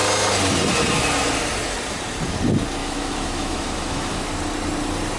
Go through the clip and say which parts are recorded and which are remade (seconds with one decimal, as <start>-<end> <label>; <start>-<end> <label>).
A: 0.0-2.8 recorded; 2.8-4.3 remade; 4.3-5.2 recorded